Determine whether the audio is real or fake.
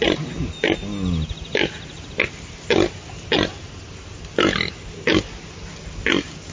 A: real